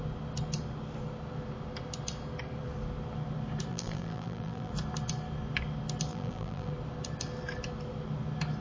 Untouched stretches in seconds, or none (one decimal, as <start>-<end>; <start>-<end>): 0.0-3.7; 4.7-6.1; 6.7-8.6